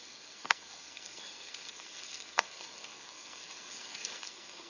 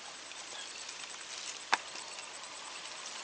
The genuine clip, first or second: second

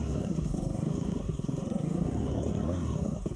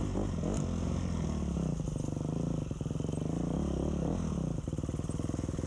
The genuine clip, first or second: second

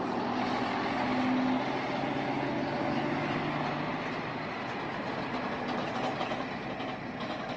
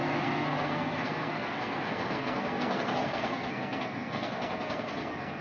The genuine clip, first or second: first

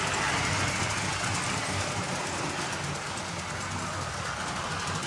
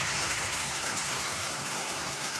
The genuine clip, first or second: first